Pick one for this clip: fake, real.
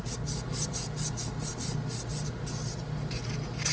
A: real